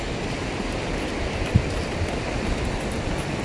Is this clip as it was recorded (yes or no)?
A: yes